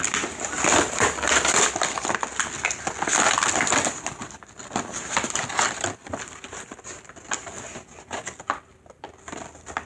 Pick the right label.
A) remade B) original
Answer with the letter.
A